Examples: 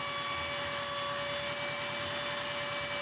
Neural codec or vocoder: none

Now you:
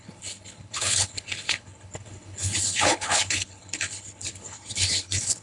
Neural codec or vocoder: codec, HILCodec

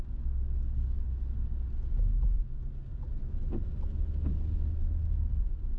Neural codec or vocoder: none